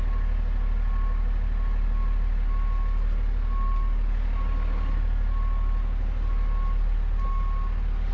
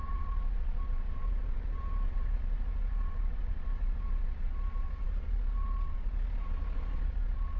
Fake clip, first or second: second